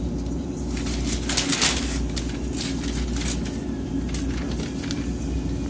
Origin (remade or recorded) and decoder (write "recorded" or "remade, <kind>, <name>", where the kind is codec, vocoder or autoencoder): recorded